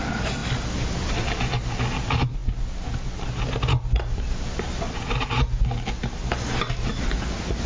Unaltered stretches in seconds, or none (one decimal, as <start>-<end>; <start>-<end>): 0.0-7.7